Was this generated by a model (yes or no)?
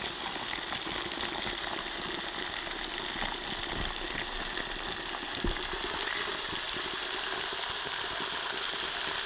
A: no